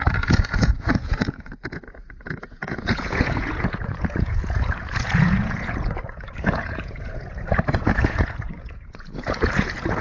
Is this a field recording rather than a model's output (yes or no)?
no